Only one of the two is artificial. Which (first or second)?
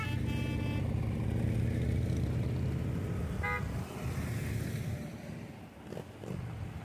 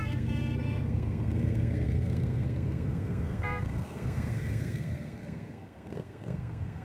second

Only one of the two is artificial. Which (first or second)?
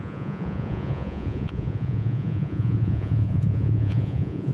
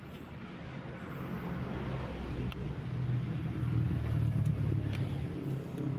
first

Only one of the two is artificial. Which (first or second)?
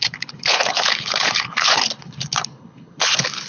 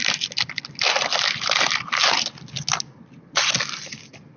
first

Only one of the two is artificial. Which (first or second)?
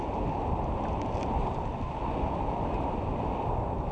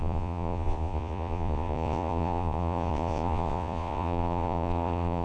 second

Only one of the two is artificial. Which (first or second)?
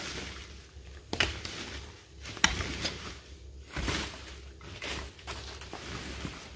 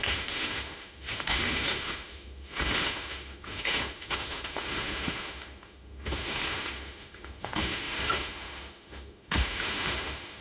second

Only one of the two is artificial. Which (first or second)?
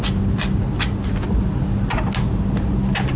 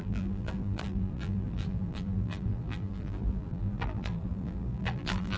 second